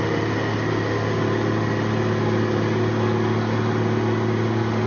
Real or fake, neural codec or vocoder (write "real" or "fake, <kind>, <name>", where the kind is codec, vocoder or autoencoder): real